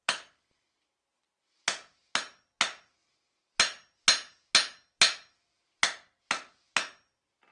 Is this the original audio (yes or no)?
yes